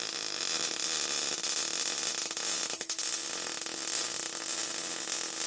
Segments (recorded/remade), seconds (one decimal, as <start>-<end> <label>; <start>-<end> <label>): 0.0-5.5 recorded